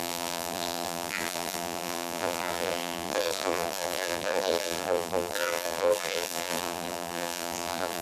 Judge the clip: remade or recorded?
remade